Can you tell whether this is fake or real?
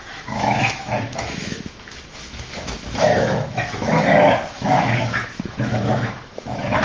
fake